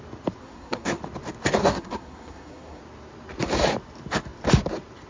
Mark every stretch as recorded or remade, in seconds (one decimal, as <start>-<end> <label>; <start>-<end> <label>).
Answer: 0.0-0.4 recorded; 0.4-1.0 remade; 1.0-1.6 recorded; 1.6-2.8 remade; 2.8-5.1 recorded